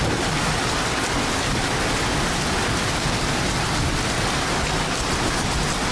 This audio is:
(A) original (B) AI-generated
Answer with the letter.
A